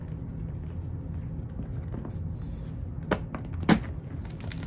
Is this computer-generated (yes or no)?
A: no